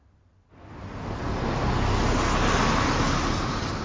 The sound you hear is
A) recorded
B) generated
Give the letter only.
A